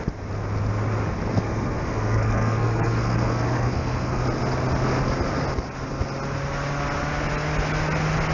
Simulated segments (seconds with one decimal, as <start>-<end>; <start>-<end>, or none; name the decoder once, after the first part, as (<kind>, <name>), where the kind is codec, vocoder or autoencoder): 1.3-4.2 (codec, SNAC)